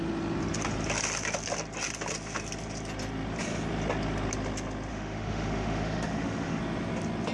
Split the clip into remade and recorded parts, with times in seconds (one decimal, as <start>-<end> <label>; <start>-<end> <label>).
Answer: 0.0-4.9 recorded; 4.9-6.6 remade; 6.6-7.3 recorded